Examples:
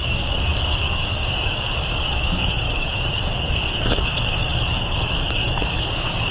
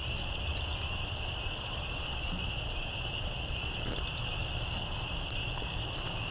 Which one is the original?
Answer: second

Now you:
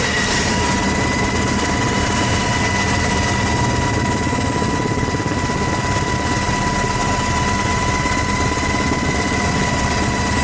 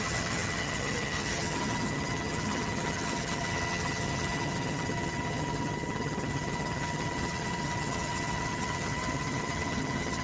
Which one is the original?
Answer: first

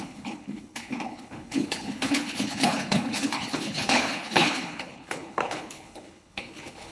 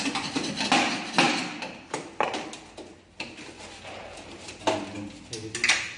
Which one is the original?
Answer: second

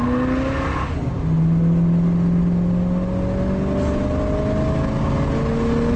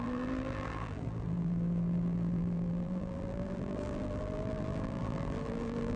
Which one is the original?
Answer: first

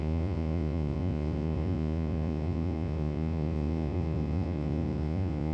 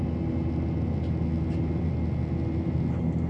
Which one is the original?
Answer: second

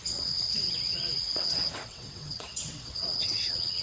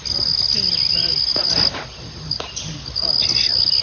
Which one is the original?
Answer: second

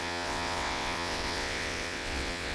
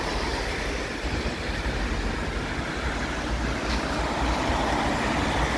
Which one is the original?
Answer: second